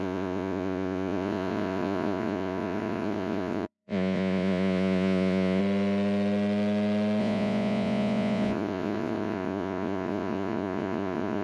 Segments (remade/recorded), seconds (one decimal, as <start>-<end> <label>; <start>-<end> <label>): 0.0-5.6 remade; 5.6-7.2 recorded; 7.2-11.4 remade